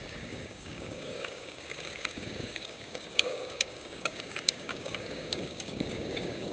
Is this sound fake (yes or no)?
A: yes